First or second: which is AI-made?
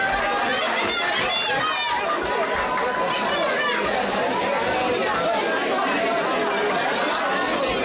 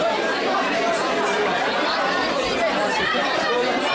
second